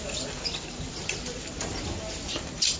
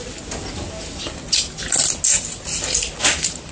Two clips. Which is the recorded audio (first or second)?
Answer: second